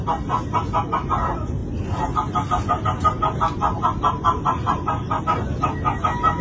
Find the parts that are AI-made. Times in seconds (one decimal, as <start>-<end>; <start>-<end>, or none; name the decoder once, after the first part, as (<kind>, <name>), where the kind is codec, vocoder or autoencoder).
1.6-5.2 (vocoder, BigVGAN v2)

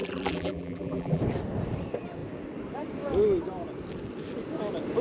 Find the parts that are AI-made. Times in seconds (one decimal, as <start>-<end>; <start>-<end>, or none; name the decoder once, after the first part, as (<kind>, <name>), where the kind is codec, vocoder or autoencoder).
0.0-1.2 (vocoder, BigVGAN v2)

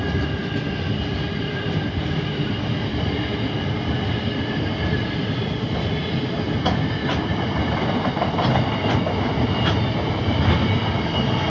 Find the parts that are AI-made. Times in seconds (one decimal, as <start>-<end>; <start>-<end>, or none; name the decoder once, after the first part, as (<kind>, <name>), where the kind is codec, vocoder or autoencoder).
none

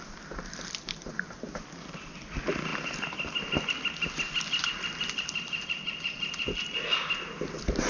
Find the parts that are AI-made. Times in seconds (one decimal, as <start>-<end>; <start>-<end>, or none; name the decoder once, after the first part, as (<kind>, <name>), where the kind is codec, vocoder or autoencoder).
0.0-2.7 (vocoder, BigVGAN v2); 4.6-7.9